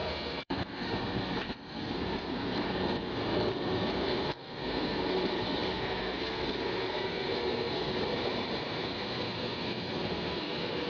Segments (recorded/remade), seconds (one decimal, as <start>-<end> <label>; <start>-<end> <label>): 0.0-7.9 remade; 7.9-8.6 recorded; 8.6-10.9 remade